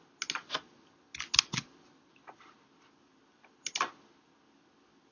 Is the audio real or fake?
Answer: real